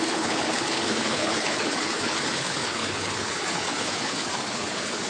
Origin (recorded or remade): remade